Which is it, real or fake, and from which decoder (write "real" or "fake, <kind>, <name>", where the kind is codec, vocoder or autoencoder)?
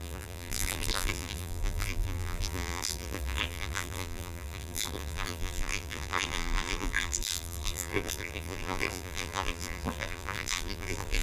fake, vocoder, BigVGAN v2